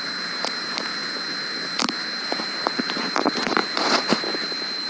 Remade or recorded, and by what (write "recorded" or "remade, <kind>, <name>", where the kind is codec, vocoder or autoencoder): remade, vocoder, BigVGAN v2